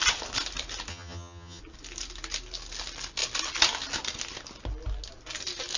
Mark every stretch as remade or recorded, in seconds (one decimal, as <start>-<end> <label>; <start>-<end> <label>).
0.0-0.9 recorded; 0.9-1.6 remade; 1.6-5.8 recorded